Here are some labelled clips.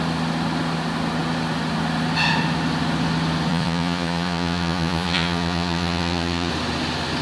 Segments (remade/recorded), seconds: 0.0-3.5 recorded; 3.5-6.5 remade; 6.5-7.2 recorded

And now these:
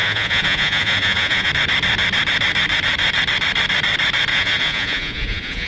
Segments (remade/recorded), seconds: 0.0-1.5 remade; 1.5-4.3 recorded; 4.3-5.7 remade

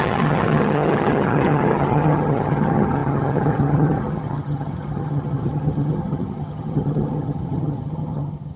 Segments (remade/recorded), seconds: 0.0-8.6 remade